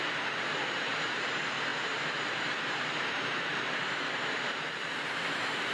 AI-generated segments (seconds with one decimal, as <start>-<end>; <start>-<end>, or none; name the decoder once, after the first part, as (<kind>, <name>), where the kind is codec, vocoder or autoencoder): 0.0-5.7 (vocoder, BigVGAN v2)